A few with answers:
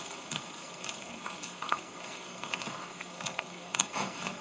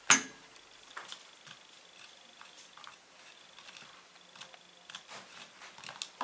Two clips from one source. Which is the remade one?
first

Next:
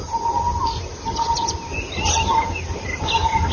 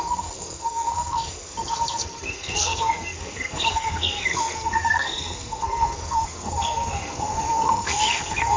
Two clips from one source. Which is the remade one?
second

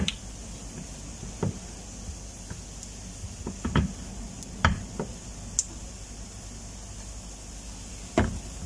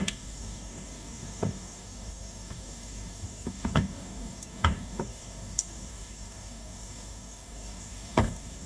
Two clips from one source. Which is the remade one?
second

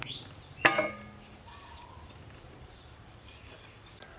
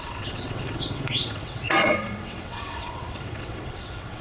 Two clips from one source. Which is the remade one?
second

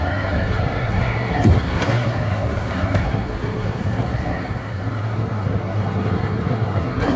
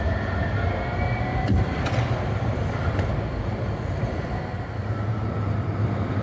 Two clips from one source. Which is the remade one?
first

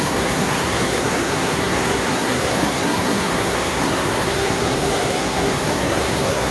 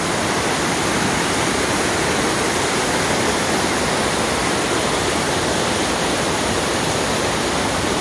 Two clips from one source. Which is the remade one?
first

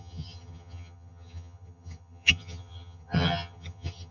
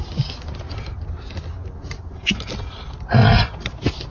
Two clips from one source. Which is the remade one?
first